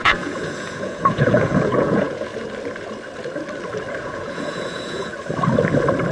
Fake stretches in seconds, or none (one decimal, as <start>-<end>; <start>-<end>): 0.0-2.3; 4.0-5.1

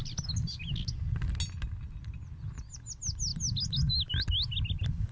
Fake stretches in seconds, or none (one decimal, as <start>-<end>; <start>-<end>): none